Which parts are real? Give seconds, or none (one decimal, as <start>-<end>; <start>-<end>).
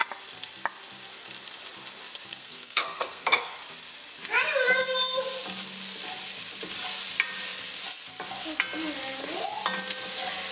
0.0-2.3; 3.6-10.5